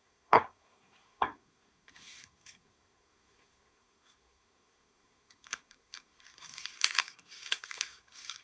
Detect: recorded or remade remade